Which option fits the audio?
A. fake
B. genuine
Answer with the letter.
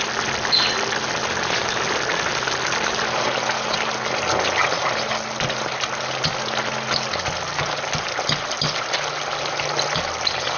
B